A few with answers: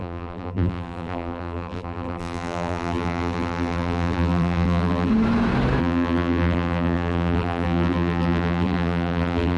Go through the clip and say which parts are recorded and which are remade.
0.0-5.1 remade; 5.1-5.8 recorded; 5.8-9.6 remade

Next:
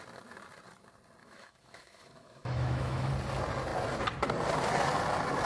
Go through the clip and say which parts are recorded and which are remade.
0.0-1.2 recorded; 1.2-3.1 remade; 3.1-5.5 recorded